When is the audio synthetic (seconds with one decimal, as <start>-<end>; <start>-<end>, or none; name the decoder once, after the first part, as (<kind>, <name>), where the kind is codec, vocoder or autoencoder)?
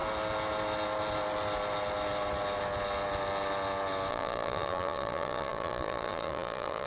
4.1-6.9 (vocoder, Vocos)